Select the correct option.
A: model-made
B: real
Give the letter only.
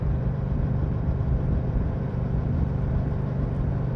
A